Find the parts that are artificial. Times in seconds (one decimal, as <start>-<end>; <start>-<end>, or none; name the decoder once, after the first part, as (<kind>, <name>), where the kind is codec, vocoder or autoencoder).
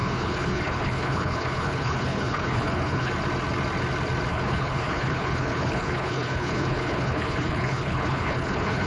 0.0-3.1 (codec, HILCodec); 4.3-8.9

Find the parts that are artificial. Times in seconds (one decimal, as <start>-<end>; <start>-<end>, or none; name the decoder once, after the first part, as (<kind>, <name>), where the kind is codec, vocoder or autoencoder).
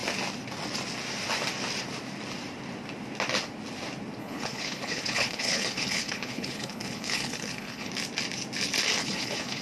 4.2-7.9 (codec, HILCodec); 9.0-9.6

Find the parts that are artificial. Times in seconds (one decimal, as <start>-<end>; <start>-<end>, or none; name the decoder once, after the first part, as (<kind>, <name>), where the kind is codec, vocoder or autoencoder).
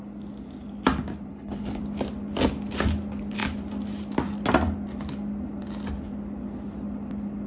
1.3-1.8 (codec, HILCodec)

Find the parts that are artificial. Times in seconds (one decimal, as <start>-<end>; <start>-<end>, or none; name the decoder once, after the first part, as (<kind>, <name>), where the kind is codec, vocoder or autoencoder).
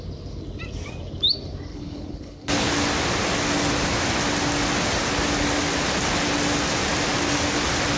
1.7-2.7 (codec, HILCodec)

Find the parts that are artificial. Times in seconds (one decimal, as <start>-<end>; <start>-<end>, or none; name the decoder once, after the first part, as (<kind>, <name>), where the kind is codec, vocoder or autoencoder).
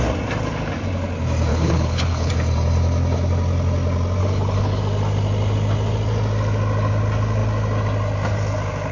1.5-2.3 (codec, HILCodec); 4.2-4.8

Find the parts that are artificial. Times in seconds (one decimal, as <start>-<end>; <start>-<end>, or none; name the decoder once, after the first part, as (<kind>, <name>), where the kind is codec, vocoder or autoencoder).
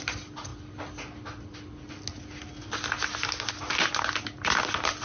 none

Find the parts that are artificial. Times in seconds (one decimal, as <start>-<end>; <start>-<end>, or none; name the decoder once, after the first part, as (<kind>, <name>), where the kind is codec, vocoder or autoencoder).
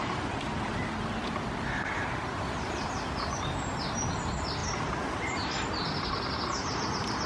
none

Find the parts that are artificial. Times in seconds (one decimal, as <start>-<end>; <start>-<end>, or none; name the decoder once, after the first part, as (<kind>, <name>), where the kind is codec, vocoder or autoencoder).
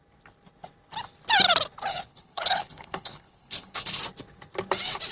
1.9-4.0 (codec, HILCodec)